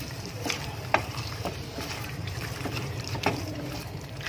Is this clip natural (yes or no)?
no